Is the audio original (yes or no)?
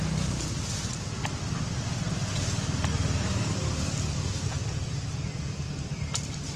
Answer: yes